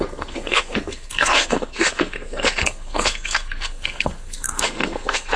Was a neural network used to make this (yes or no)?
yes